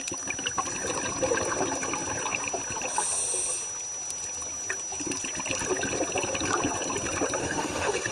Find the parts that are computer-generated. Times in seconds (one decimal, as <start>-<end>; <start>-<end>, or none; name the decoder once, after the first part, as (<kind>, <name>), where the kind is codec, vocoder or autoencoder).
7.4-8.1 (autoencoder, DAC-VAE)